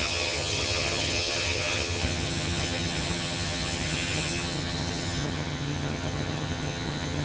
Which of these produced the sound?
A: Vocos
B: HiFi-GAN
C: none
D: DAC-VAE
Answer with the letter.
B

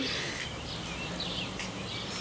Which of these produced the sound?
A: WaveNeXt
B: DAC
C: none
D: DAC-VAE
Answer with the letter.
C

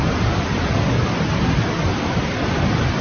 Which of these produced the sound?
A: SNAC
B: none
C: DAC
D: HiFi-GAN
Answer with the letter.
B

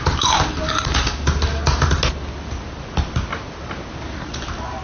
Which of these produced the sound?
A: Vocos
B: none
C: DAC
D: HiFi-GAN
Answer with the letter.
B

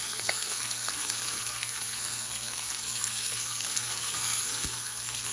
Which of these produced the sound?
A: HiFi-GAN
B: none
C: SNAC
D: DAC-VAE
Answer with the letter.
C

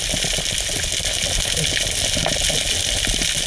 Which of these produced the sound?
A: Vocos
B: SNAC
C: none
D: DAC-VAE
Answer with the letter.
C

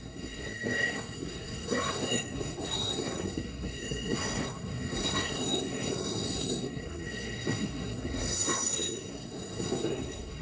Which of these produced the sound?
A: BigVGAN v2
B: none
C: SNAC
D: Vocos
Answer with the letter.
C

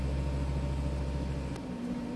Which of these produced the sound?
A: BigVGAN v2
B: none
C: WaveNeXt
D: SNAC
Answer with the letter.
B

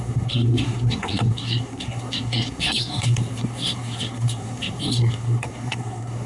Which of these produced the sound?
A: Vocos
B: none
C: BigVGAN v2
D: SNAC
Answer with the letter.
D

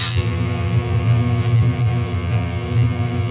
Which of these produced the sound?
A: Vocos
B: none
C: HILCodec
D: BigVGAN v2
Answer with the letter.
D